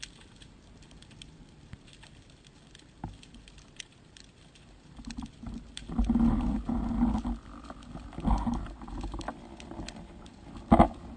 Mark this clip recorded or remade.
recorded